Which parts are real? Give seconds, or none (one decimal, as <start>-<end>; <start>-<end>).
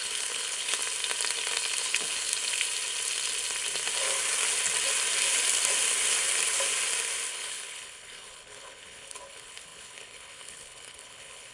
0.8-1.8; 2.3-7.3